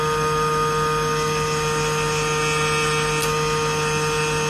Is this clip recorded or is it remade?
recorded